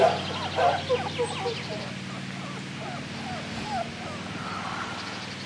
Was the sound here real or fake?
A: real